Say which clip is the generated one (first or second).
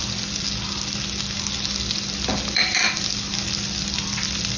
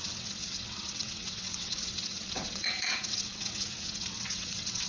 second